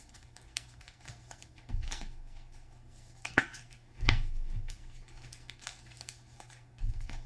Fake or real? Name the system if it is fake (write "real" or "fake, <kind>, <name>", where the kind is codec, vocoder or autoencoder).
fake, codec, SNAC